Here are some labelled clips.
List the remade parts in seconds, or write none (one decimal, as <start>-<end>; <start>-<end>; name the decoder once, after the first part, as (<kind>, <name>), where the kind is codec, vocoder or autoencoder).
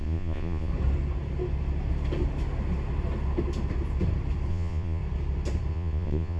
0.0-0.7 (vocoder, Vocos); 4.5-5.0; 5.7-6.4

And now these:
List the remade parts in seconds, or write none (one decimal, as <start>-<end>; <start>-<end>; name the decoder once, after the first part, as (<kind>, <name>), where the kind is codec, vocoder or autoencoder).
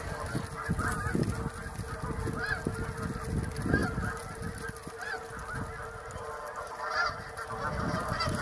none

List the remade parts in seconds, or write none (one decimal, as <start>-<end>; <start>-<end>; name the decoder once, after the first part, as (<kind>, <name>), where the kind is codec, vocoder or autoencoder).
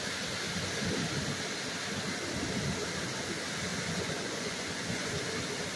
3.7-5.1 (vocoder, Vocos)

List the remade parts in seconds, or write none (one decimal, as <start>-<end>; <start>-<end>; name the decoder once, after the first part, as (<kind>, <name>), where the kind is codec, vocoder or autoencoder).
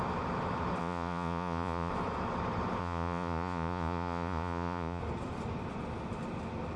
0.8-1.9 (vocoder, Vocos); 2.8-5.0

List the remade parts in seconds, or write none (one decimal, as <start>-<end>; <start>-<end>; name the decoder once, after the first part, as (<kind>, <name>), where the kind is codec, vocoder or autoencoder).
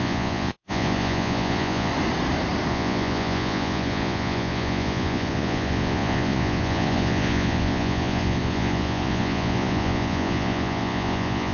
0.0-1.9 (vocoder, Vocos); 2.7-11.5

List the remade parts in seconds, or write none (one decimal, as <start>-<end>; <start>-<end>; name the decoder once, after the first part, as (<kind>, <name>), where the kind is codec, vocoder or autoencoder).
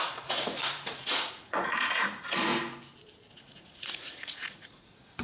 0.0-2.5 (vocoder, Vocos); 3.3-5.2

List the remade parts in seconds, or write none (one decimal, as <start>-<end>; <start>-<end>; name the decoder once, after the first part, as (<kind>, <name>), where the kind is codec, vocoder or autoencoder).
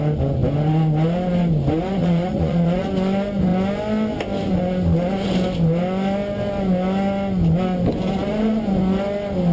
2.0-2.9 (vocoder, Vocos)